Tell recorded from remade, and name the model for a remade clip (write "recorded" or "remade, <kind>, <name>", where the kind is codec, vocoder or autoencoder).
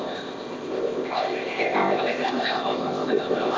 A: remade, codec, ZipCodec